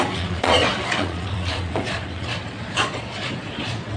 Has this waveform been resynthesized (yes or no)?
yes